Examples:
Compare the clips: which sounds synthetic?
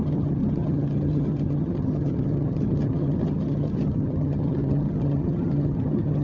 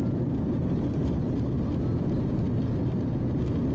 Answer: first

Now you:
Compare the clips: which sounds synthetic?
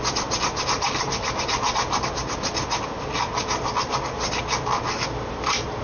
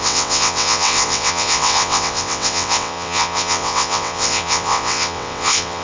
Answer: second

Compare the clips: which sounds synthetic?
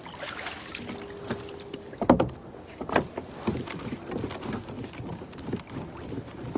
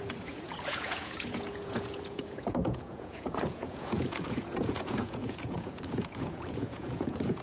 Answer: second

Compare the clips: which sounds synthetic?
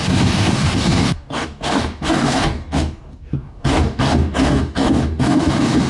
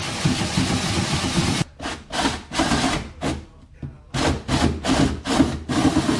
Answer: first